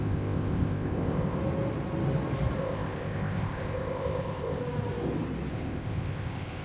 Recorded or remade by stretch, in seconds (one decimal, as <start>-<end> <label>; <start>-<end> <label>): 0.0-1.4 remade; 1.4-2.6 recorded; 2.6-4.6 remade; 4.6-5.5 recorded; 5.5-6.6 remade